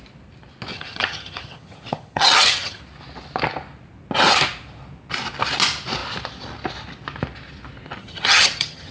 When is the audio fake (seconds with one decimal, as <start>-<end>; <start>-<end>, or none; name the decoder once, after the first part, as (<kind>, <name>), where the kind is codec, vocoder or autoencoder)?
0.7-2.8 (vocoder, HiFi-GAN); 8.0-8.9